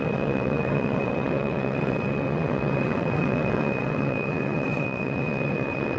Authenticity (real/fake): fake